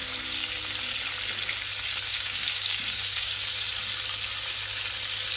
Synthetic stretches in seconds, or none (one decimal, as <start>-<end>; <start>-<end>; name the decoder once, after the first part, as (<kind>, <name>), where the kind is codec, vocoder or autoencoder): 2.1-3.5 (codec, DAC)